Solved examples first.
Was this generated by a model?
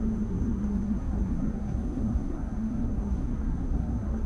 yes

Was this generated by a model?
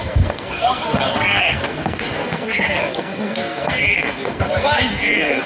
yes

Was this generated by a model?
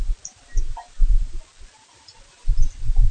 no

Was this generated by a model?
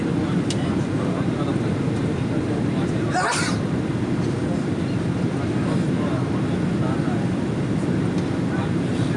no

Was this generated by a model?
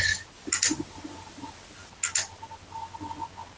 no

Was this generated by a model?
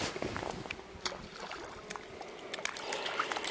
no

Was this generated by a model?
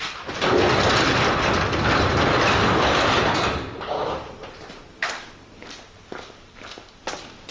no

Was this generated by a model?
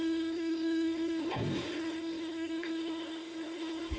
yes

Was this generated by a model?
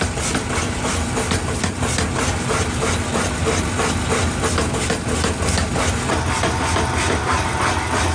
no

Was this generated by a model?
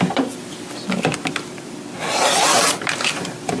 no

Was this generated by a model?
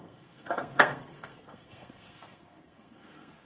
yes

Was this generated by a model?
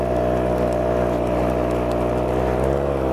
no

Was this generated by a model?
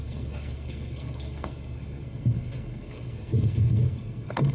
yes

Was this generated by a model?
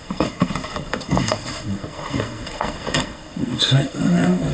yes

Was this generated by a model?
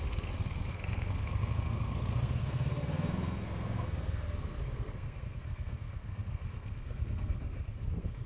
yes